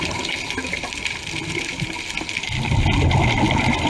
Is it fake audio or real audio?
real